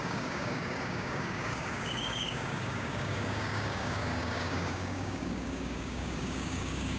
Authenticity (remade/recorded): remade